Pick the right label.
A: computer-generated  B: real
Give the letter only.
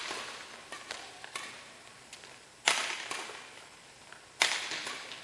B